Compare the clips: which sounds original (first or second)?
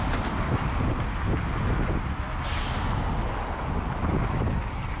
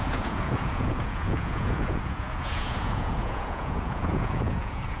first